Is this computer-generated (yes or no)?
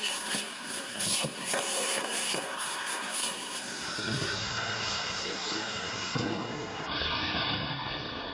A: yes